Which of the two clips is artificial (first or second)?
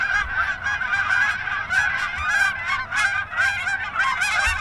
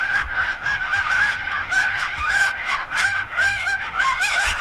second